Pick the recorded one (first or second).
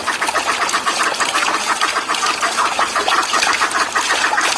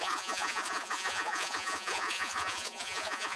first